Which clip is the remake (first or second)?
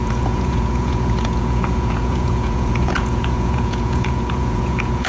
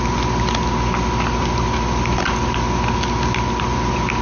first